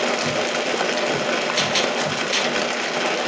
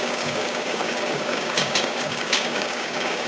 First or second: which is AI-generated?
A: second